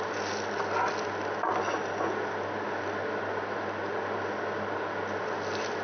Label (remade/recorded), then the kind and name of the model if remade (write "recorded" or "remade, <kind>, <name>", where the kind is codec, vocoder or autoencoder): recorded